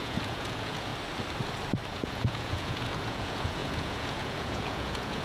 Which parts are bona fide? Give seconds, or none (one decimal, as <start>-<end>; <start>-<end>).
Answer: 0.9-1.9